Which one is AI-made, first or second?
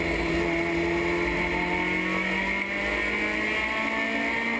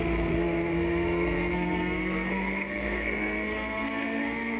second